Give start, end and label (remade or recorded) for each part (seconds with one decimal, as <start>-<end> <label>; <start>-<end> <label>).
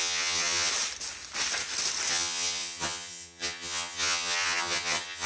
0.0-0.7 remade; 0.7-2.1 recorded; 2.1-5.3 remade